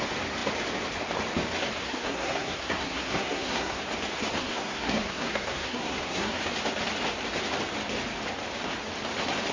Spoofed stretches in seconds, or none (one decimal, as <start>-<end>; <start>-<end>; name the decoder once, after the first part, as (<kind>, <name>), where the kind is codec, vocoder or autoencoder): 1.8-3.8 (codec, SNAC); 4.4-6.4